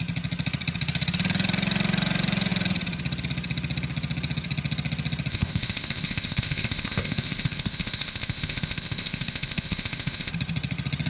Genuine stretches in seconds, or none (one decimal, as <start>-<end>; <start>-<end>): 0.0-5.3; 10.3-11.1

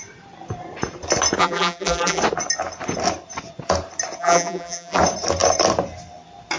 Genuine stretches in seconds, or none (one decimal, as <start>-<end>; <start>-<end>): 0.0-1.4; 2.2-4.2; 5.0-6.6

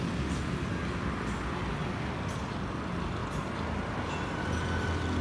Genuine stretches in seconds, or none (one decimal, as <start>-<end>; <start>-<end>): 0.0-5.2